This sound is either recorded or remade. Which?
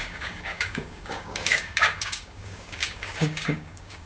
remade